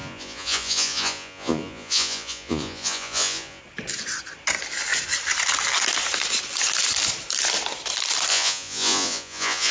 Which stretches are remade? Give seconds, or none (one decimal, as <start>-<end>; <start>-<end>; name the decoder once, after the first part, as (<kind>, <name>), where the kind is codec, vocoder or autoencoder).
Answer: 0.0-3.6 (vocoder, Vocos); 8.3-9.7